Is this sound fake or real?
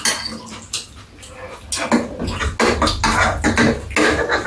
real